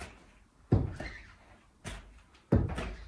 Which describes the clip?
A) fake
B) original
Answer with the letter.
B